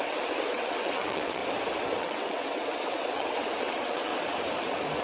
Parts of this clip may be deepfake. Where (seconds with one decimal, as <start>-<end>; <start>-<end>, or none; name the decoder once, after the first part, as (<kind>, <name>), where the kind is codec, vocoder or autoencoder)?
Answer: 0.0-1.4 (vocoder, WaveNeXt); 2.0-4.1